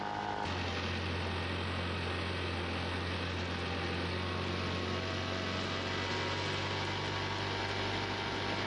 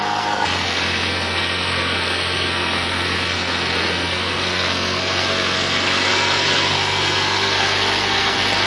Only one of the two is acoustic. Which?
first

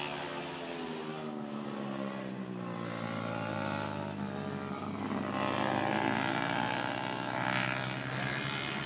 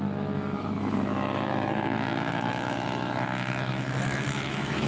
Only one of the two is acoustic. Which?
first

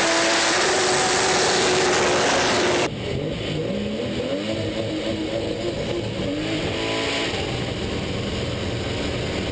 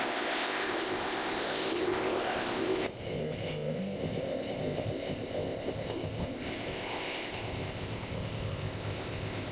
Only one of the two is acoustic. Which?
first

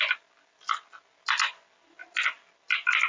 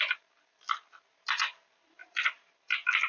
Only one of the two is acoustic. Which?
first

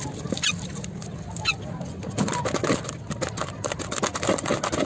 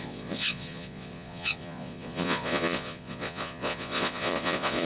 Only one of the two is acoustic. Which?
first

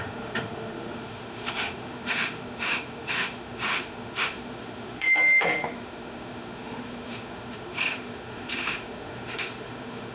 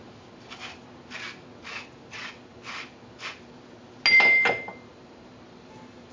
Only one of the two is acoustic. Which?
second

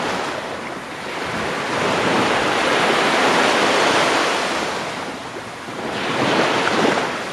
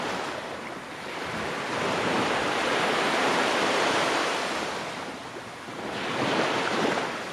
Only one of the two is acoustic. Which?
first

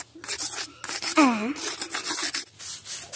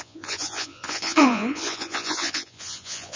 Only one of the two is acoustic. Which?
first